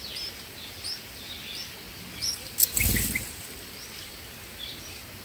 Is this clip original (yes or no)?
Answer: yes